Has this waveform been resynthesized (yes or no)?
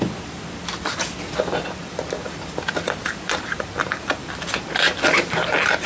yes